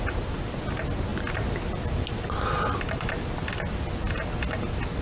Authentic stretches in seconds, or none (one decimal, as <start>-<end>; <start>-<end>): 0.0-5.0